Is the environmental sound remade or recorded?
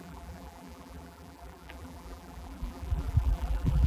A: remade